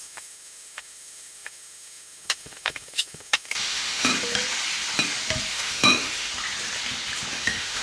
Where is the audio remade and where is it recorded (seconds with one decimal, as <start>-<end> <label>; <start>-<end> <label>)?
0.0-4.1 remade; 4.1-5.5 recorded; 5.5-6.3 remade; 6.3-7.3 recorded; 7.3-7.8 remade